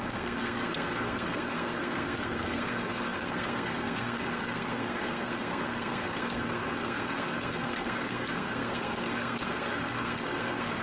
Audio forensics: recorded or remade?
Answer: remade